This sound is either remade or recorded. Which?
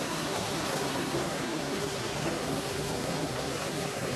remade